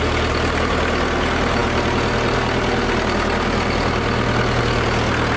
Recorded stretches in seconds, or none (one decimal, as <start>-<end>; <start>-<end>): 0.0-5.4